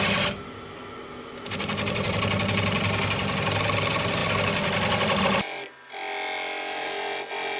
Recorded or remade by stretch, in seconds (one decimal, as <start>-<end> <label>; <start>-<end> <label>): 0.0-7.6 recorded

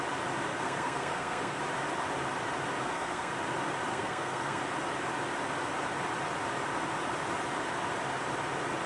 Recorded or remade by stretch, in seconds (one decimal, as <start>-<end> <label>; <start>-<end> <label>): 0.0-0.5 recorded; 0.5-1.6 remade; 1.6-2.8 recorded; 2.8-3.3 remade; 3.3-3.9 recorded; 3.9-4.6 remade; 4.6-8.9 recorded